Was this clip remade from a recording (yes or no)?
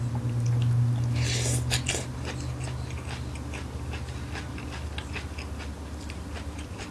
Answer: no